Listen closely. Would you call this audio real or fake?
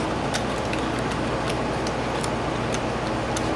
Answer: real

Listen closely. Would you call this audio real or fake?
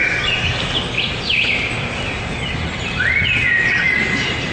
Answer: real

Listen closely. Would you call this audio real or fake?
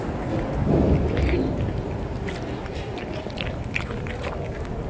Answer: real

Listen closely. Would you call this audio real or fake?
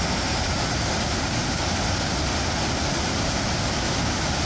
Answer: real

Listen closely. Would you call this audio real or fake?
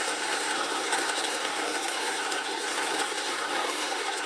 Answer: fake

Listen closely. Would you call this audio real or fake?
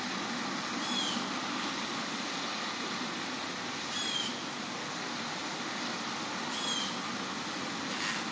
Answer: fake